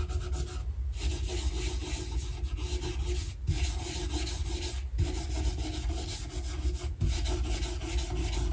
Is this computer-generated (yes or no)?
no